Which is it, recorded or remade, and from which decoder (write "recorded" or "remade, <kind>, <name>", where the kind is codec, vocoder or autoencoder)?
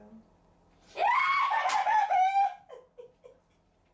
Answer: recorded